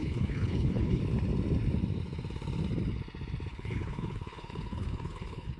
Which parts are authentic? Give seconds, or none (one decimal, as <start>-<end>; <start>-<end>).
1.0-3.5

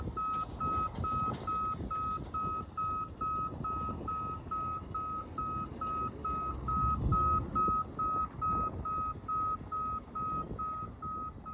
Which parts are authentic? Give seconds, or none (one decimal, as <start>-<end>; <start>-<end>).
0.0-11.5

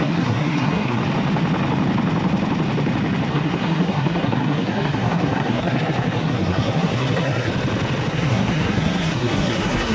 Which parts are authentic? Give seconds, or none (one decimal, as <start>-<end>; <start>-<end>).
1.0-3.3; 7.5-8.1

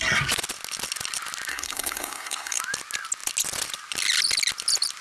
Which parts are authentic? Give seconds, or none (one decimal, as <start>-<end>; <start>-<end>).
0.0-1.5; 2.6-5.0

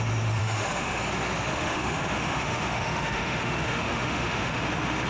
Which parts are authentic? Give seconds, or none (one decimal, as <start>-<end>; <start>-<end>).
0.0-0.4; 1.0-1.5; 4.6-5.1